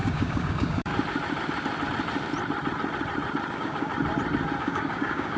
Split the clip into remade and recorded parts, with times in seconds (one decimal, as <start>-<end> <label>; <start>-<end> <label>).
0.0-0.9 remade; 0.9-3.5 recorded; 3.5-3.9 remade; 3.9-4.6 recorded; 4.6-5.4 remade

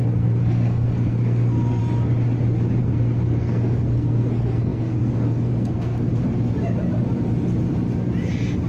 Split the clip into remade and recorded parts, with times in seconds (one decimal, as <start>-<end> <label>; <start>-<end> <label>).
0.0-1.8 remade; 1.8-2.8 recorded; 2.8-6.1 remade; 6.1-8.7 recorded